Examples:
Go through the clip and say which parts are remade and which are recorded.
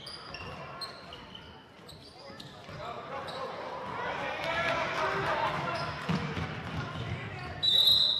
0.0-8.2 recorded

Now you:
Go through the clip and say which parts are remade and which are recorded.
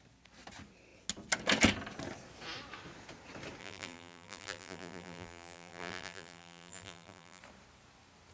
0.0-3.6 recorded; 3.6-7.4 remade; 7.4-8.3 recorded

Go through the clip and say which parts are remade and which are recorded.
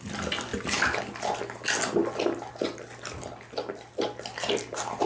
0.0-0.5 recorded; 0.5-1.0 remade; 1.0-5.1 recorded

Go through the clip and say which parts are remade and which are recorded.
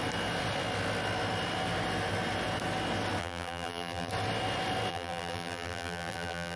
0.0-3.2 recorded; 3.2-4.1 remade; 4.1-4.9 recorded; 4.9-6.6 remade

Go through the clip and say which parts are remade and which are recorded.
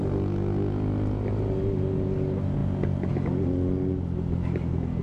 0.0-5.0 recorded